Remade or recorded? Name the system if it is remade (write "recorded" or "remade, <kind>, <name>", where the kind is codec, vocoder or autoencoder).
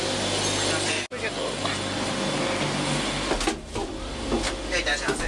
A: recorded